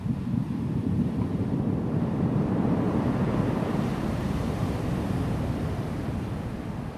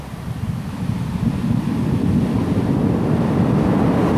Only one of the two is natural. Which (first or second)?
second